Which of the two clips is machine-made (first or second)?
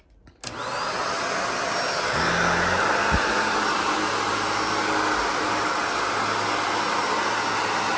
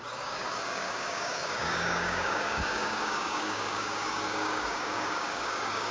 second